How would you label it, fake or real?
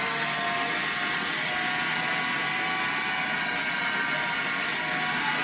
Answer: real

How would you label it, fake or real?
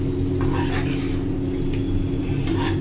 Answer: real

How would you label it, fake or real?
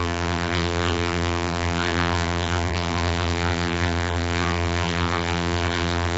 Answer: fake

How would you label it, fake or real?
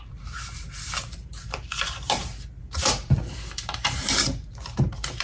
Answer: fake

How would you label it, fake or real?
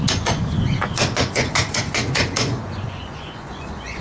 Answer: fake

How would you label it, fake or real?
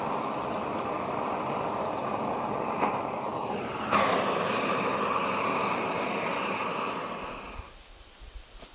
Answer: real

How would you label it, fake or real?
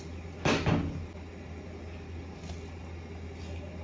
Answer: real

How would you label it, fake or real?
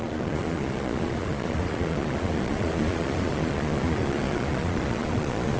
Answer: fake